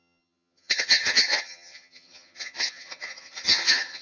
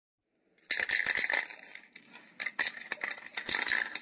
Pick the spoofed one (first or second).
first